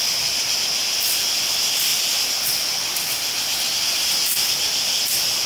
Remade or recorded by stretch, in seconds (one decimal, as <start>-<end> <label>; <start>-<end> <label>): 0.0-5.5 recorded